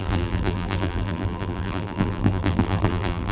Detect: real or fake fake